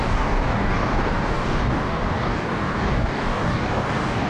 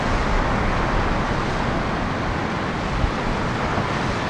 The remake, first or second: first